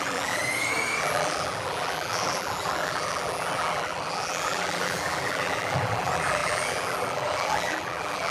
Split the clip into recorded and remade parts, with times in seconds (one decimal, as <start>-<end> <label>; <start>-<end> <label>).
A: 0.0-0.4 remade; 0.4-1.0 recorded; 1.0-8.3 remade